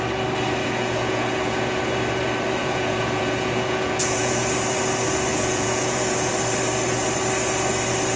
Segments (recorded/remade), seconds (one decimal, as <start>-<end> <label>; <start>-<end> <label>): 0.0-0.6 recorded; 0.6-1.8 remade; 1.8-2.6 recorded; 2.6-4.4 remade; 4.4-5.3 recorded; 5.3-6.3 remade; 6.3-8.2 recorded